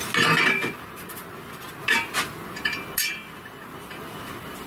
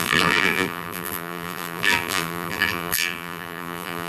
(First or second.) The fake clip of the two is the second